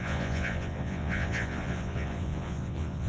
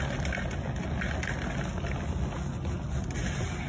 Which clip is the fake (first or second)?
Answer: first